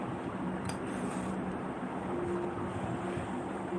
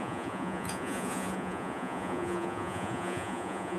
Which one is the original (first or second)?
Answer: first